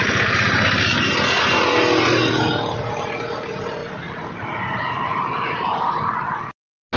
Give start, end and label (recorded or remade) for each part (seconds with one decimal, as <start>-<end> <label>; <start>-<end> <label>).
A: 0.0-7.0 recorded